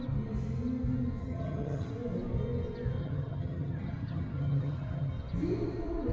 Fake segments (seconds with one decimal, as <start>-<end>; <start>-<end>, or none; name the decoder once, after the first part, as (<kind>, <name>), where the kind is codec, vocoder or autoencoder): 1.2-1.9 (vocoder, HiFi-GAN); 3.0-5.1